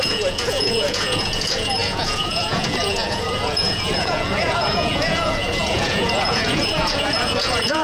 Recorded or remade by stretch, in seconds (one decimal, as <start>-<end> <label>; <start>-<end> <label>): 0.0-7.8 remade